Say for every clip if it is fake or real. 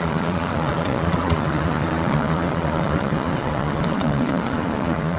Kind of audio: fake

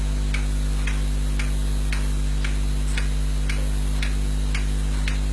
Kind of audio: real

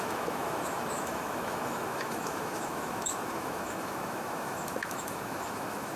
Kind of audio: fake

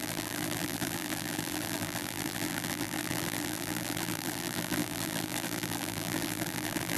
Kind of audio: fake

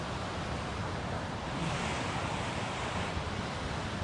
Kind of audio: real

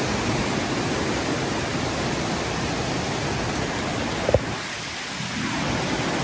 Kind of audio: real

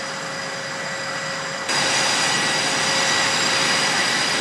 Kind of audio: real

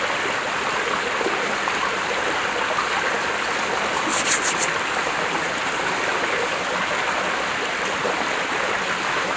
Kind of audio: real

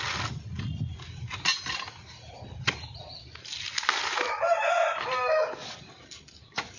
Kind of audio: real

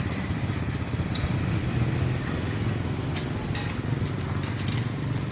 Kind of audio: real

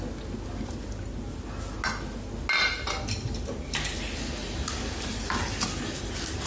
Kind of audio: real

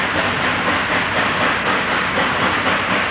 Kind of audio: fake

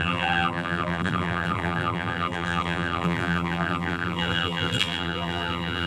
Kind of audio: fake